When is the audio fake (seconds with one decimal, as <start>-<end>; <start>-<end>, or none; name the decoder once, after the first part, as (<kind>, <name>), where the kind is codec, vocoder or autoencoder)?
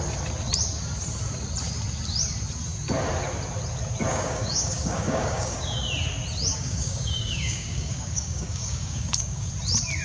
4.1-5.8 (codec, DAC); 6.5-9.5